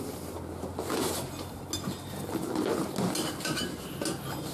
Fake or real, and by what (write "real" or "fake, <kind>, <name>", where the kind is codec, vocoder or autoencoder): real